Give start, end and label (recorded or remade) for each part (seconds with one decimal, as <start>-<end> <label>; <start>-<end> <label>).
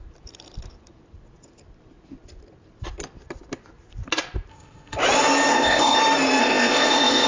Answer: 0.0-4.5 recorded; 4.5-5.0 remade; 5.0-5.5 recorded; 5.5-6.0 remade; 6.0-6.4 recorded; 6.4-7.3 remade